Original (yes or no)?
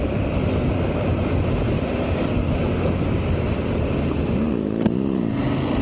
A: yes